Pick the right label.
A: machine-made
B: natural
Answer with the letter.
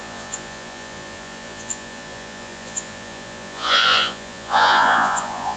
A